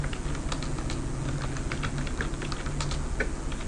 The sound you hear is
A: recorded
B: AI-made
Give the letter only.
A